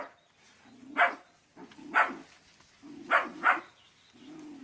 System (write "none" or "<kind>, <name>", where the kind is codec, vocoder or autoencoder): none